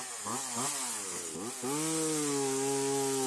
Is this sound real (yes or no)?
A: yes